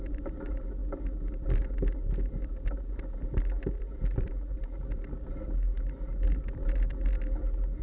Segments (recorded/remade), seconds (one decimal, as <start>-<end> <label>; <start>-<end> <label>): 0.0-7.8 recorded